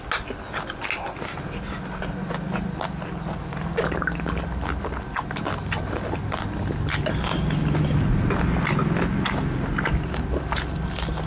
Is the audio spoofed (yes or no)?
no